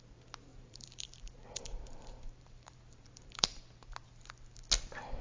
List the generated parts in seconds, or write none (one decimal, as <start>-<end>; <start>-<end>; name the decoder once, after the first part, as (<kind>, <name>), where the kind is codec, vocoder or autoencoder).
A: 0.5-3.6 (vocoder, BigVGAN v2)